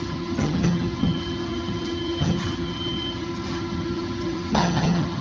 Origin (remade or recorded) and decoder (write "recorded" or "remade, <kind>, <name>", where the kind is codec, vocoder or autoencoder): remade, vocoder, HiFi-GAN